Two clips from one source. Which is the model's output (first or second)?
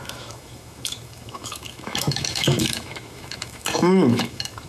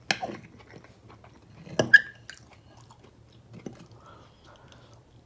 first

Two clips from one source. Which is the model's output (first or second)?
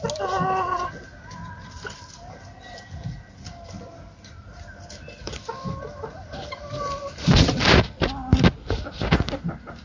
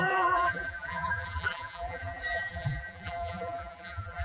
second